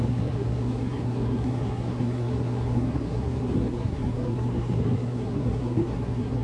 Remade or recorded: remade